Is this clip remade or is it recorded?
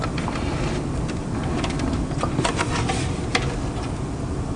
remade